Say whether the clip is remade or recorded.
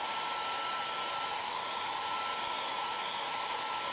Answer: recorded